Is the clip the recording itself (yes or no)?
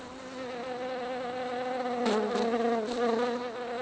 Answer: yes